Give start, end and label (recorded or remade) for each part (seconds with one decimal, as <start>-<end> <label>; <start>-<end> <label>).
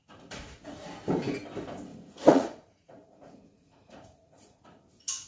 0.0-0.9 remade; 0.9-1.9 recorded; 1.9-4.8 remade; 4.8-5.3 recorded